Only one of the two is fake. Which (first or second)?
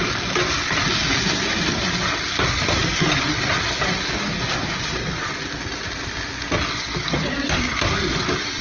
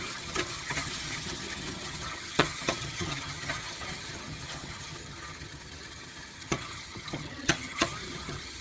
second